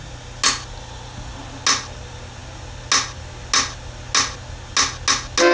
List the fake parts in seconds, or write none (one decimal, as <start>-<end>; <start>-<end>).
none